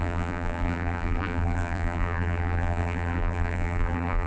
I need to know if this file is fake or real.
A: fake